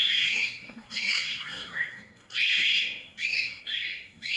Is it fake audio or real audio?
fake